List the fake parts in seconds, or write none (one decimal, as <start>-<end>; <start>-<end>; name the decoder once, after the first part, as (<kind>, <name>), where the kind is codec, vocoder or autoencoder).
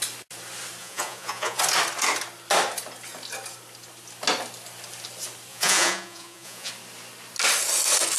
0.8-1.6 (vocoder, Vocos); 5.5-6.7